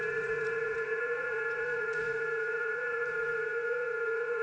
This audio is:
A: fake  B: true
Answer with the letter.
A